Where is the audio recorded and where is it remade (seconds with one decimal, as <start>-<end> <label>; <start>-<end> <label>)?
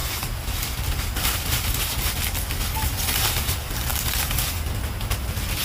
0.0-1.9 remade; 1.9-5.6 recorded